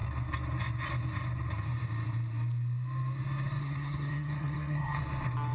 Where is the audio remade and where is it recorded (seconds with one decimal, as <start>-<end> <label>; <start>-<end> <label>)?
0.0-3.6 recorded; 3.6-5.0 remade; 5.0-5.5 recorded